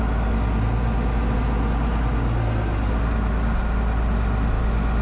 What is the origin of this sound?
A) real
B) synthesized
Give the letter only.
A